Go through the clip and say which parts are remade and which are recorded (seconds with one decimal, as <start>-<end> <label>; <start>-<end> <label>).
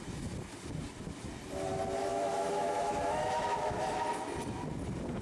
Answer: 0.0-2.1 recorded; 2.1-4.0 remade; 4.0-5.2 recorded